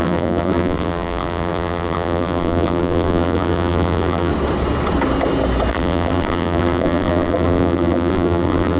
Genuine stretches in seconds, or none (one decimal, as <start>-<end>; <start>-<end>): 4.3-5.7